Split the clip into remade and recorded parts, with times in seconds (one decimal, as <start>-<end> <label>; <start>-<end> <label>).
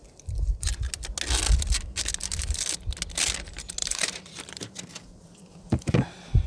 0.0-3.8 recorded; 3.8-5.9 remade; 5.9-6.5 recorded